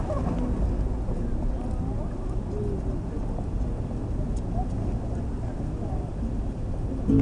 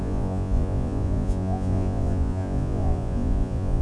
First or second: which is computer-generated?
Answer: second